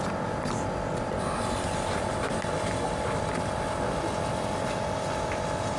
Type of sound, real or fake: real